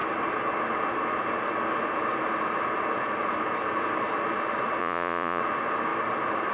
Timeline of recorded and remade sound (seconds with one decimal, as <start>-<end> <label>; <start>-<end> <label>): 0.0-4.8 recorded; 4.8-5.4 remade; 5.4-6.5 recorded